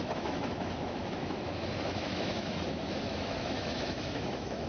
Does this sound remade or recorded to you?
remade